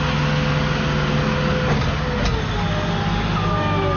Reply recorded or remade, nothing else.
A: recorded